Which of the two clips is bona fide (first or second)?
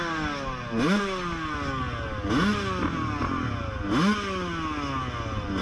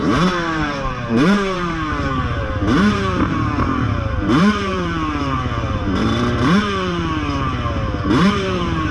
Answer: first